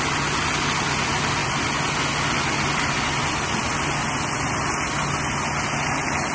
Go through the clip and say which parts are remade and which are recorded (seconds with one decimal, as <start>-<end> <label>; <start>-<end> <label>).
0.0-6.3 recorded